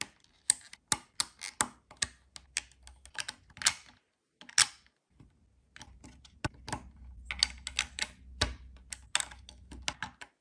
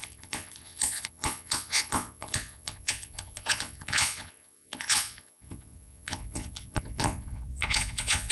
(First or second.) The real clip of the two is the first